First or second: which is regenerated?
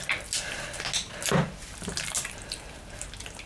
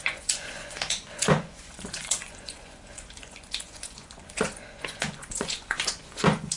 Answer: second